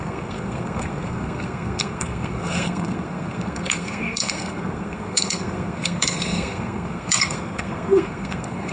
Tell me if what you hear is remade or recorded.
remade